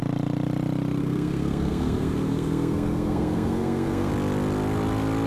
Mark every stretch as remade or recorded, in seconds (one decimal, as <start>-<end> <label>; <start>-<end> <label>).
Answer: 0.0-1.0 recorded; 1.0-4.1 remade; 4.1-5.3 recorded